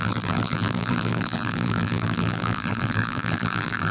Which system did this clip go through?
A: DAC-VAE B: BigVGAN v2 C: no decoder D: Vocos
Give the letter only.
B